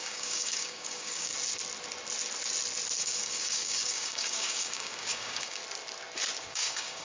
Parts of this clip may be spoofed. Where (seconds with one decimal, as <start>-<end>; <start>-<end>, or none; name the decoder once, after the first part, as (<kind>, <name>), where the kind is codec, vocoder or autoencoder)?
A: 0.0-1.3 (codec, DAC); 3.0-5.6; 6.5-7.0